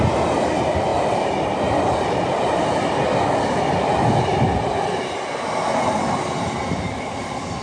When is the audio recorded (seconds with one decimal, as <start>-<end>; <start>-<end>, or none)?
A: 0.0-7.6